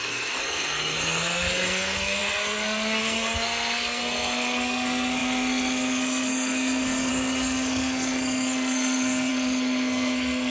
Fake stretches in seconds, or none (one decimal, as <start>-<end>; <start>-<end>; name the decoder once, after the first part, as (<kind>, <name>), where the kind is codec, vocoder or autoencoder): 0.0-10.5 (codec, SNAC)